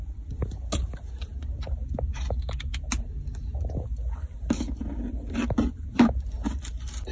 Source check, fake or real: real